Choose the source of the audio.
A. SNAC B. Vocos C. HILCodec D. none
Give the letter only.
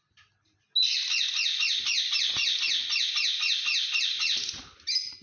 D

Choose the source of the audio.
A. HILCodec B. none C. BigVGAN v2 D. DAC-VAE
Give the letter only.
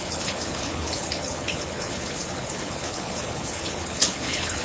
A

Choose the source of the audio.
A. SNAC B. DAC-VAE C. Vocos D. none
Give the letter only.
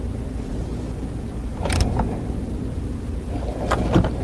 D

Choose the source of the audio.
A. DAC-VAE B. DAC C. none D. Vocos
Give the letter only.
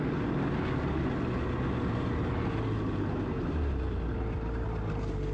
C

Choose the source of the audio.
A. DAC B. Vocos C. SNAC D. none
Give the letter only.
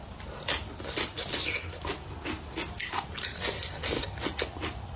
D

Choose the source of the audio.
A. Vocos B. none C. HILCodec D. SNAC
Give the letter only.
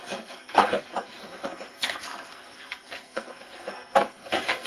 D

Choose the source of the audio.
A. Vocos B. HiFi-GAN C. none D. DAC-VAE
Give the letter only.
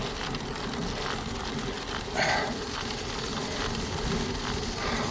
C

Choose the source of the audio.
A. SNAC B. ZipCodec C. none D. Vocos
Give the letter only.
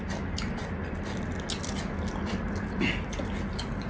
C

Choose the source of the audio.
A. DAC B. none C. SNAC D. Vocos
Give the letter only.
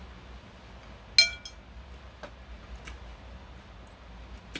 B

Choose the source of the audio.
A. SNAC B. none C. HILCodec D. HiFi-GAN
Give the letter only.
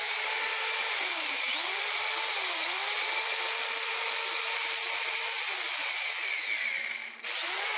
B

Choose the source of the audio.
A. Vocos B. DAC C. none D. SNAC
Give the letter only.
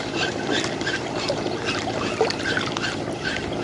C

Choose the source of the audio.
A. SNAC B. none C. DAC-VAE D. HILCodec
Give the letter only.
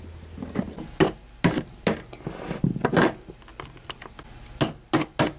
B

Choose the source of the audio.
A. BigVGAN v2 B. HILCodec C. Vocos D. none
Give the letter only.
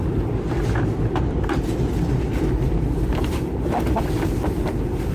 A